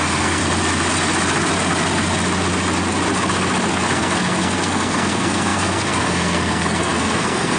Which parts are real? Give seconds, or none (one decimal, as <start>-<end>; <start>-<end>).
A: 0.4-3.7